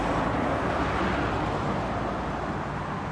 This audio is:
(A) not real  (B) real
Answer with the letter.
B